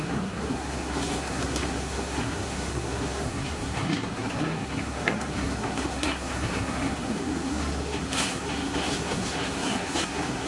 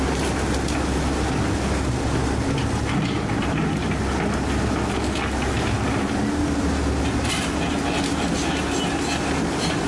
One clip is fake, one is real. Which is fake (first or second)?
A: first